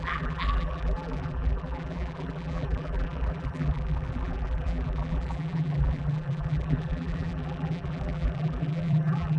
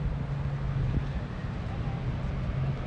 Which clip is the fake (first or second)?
first